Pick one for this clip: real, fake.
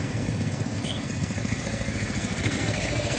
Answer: fake